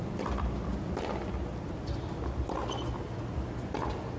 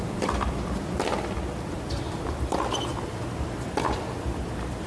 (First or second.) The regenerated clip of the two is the second